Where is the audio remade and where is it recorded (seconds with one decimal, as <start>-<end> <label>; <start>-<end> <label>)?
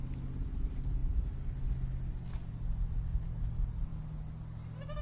0.0-5.0 recorded